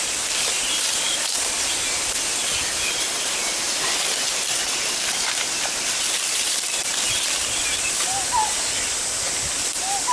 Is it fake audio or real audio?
real